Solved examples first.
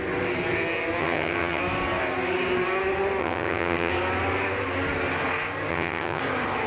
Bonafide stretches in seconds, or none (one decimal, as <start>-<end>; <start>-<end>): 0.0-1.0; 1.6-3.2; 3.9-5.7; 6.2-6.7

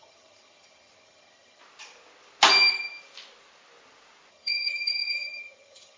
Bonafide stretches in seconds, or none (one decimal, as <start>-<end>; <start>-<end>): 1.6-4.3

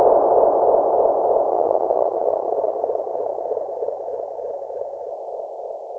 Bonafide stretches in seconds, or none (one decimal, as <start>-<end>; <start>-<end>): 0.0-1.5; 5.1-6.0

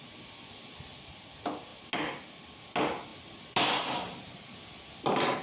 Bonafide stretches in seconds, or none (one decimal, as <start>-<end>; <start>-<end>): 0.0-5.4

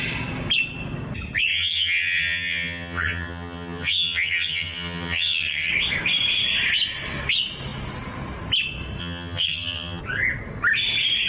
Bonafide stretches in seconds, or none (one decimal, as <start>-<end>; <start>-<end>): 0.0-1.5; 5.7-9.0; 10.0-11.3

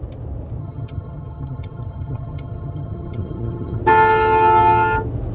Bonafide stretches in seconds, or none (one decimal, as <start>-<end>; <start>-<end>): 0.0-0.6; 3.8-5.3